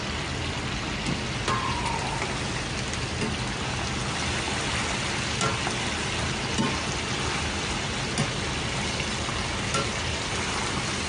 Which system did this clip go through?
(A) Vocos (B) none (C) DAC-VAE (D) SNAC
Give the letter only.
B